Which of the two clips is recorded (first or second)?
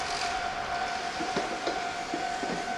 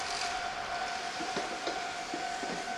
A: first